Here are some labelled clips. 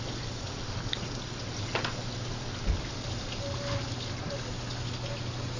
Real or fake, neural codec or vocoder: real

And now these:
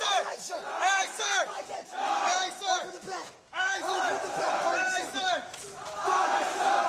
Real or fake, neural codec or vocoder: fake, autoencoder, DAC-VAE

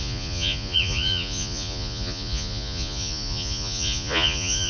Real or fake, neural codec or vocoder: fake, vocoder, Vocos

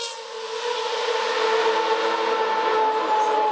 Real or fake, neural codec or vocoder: real